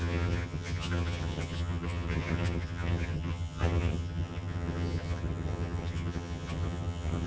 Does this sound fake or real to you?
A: fake